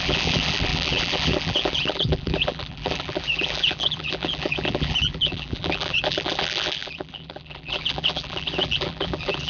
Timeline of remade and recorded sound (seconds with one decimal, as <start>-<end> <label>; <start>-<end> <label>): 0.0-9.5 remade